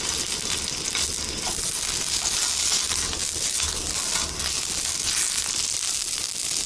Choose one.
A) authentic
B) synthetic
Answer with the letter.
A